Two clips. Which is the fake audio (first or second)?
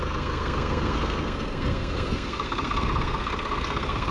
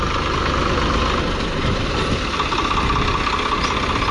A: first